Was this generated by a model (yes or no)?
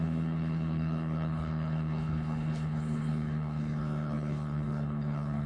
yes